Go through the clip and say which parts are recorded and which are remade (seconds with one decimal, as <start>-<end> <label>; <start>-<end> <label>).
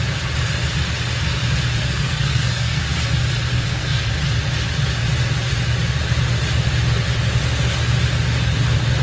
0.0-1.8 recorded; 1.8-2.8 remade; 2.8-3.5 recorded; 3.5-4.1 remade; 4.1-9.0 recorded